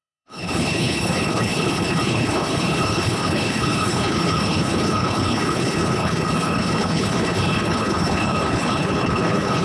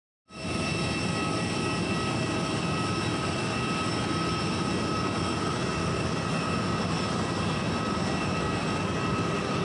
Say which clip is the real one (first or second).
second